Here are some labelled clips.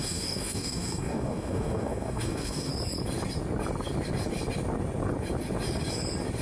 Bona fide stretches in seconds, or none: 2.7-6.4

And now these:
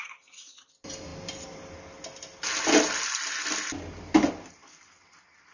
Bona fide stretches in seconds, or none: 0.0-5.5

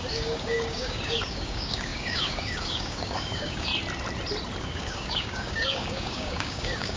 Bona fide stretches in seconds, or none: 3.7-4.6

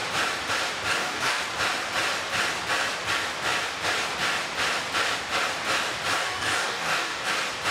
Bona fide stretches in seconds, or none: 0.0-0.9; 1.4-6.2; 7.3-7.7

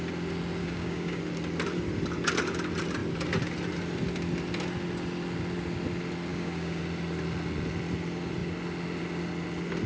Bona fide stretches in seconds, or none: 0.0-0.6; 1.2-6.3; 6.8-9.9